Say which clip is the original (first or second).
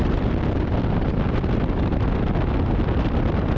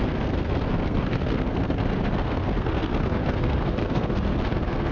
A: first